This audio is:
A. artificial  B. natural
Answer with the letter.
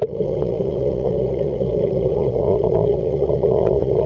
A